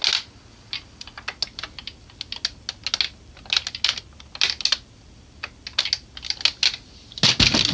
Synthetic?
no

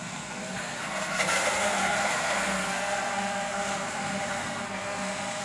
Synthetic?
yes